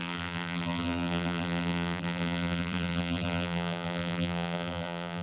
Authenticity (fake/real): fake